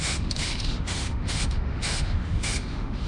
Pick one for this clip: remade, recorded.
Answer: remade